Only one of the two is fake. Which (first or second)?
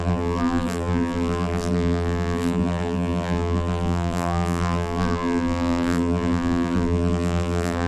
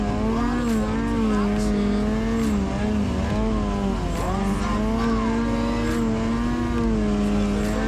first